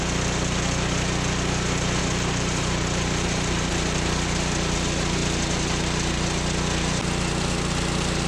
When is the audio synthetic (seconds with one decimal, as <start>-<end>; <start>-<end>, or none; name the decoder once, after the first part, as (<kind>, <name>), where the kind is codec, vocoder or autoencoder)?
2.0-3.7 (vocoder, BigVGAN v2)

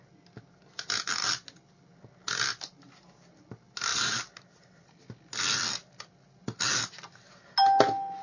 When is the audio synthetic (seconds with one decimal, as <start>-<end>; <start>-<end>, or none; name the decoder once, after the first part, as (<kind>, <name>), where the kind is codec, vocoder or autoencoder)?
3.9-5.0 (vocoder, BigVGAN v2)

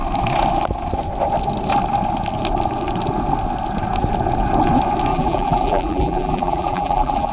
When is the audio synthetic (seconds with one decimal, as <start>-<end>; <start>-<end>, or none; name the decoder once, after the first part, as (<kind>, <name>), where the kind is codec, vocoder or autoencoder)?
5.1-7.3 (vocoder, BigVGAN v2)

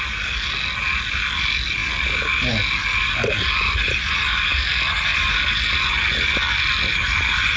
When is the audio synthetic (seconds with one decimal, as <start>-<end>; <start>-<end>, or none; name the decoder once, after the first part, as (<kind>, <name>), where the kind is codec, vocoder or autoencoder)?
none

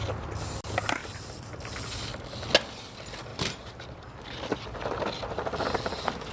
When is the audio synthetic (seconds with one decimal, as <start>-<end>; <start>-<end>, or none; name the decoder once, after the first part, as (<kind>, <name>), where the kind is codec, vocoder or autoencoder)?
1.0-1.6 (vocoder, BigVGAN v2); 3.3-4.0

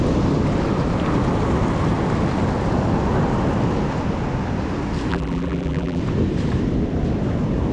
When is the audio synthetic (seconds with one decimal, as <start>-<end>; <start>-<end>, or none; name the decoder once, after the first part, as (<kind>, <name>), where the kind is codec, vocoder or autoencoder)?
5.1-6.0 (vocoder, BigVGAN v2)

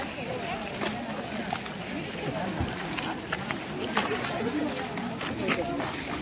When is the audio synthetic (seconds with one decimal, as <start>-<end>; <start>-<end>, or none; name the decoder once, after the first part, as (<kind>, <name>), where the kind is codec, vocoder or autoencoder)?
none

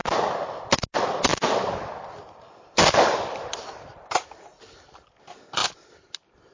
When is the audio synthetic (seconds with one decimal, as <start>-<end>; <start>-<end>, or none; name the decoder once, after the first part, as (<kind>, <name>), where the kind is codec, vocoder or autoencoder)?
0.0-0.7 (vocoder, BigVGAN v2); 1.3-3.9